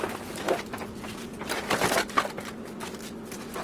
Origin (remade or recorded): recorded